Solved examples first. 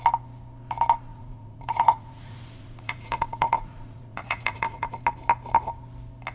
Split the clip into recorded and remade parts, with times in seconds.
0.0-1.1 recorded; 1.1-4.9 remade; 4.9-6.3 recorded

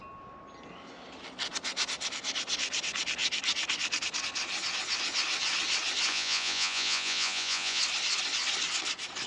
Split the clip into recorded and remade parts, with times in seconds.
0.0-6.1 recorded; 6.1-7.8 remade; 7.8-9.3 recorded

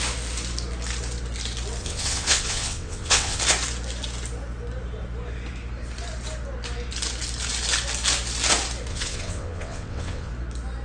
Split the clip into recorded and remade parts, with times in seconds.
0.0-1.8 recorded; 1.8-3.4 remade; 3.4-8.9 recorded; 8.9-10.3 remade; 10.3-10.8 recorded

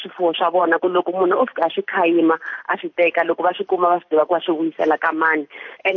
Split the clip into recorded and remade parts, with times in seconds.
0.0-6.0 recorded

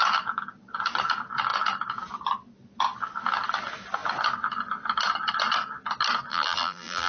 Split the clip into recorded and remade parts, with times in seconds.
0.0-6.3 recorded; 6.3-7.1 remade

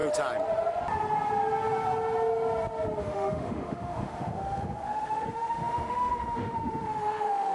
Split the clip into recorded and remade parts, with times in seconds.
0.0-3.0 recorded; 3.0-7.5 remade

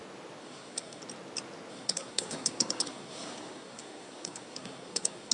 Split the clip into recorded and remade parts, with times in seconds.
0.0-0.4 recorded; 0.4-1.0 remade; 1.0-1.7 recorded; 1.7-5.3 remade